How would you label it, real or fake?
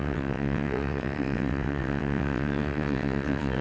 fake